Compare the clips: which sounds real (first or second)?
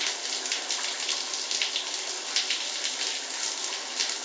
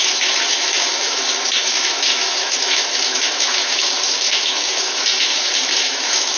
first